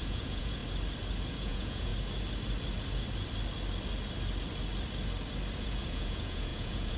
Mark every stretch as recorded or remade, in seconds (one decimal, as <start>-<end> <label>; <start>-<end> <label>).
0.0-0.6 remade; 0.6-1.3 recorded; 1.3-1.9 remade; 1.9-5.6 recorded; 5.6-7.0 remade